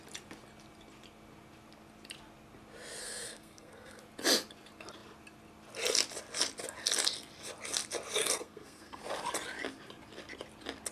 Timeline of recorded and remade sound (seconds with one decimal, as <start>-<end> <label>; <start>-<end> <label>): 0.0-3.0 recorded; 3.0-4.0 remade; 4.0-8.2 recorded; 8.2-9.0 remade; 9.0-10.9 recorded